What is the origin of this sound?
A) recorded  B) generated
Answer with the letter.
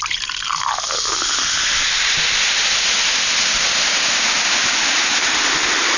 A